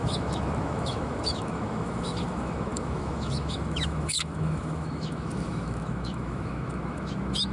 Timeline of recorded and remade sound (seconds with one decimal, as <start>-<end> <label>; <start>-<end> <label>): 0.0-7.5 remade